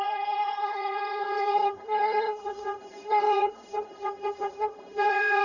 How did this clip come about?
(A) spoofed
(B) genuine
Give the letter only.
A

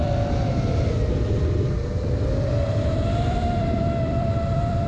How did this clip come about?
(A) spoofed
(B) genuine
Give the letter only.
A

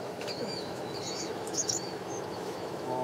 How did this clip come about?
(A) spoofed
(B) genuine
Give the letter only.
A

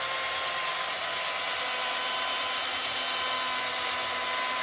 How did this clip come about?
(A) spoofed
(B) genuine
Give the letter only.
B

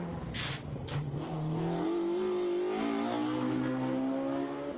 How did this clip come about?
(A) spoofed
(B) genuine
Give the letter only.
B